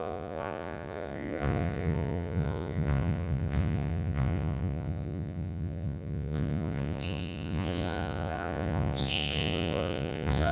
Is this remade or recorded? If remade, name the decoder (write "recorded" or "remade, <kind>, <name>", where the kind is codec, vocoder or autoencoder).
remade, vocoder, Vocos